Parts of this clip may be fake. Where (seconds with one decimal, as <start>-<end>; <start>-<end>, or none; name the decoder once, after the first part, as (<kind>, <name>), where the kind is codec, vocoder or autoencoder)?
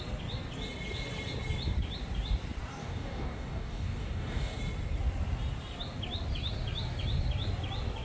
2.8-4.6 (codec, DAC)